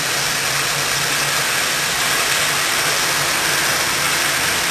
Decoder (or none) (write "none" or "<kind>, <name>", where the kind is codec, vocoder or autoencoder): none